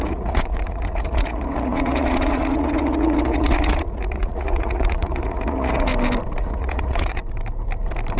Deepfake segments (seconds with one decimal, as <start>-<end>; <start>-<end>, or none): 0.0-5.9; 6.4-7.2